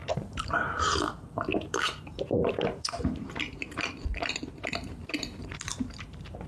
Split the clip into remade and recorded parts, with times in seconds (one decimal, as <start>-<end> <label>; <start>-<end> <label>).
0.0-6.5 remade